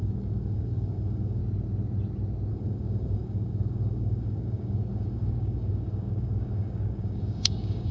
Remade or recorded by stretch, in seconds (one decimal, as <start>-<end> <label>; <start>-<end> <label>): 0.0-1.4 remade; 1.4-2.5 recorded; 2.5-7.9 remade